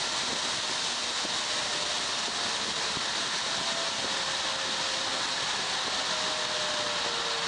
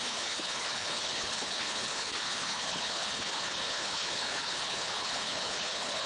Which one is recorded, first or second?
first